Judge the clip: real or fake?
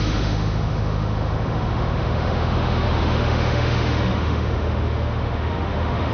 fake